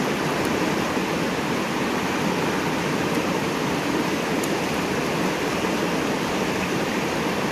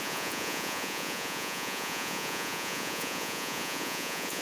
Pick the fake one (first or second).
second